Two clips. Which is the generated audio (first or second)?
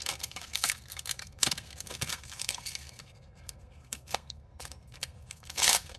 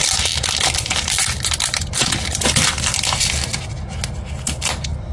first